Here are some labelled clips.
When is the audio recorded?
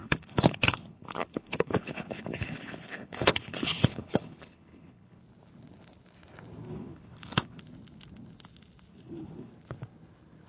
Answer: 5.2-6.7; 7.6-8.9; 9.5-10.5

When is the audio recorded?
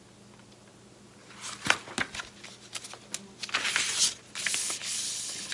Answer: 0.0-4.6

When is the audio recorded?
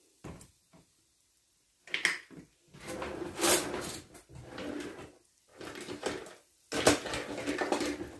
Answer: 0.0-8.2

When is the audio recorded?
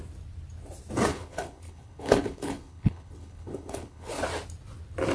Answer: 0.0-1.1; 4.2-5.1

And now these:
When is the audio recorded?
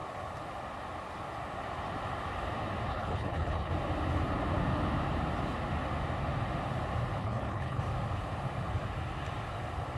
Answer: 0.0-2.9; 3.7-7.2; 7.8-10.0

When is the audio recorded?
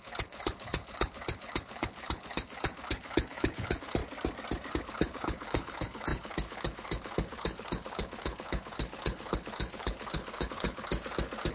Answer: 4.0-4.7; 10.9-11.5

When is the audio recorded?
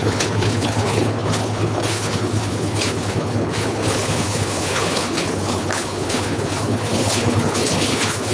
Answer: none